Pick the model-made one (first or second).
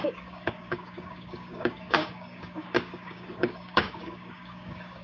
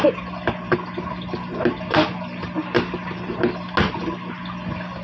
first